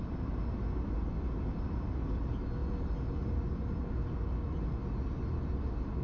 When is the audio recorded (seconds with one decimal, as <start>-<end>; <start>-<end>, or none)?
0.0-6.0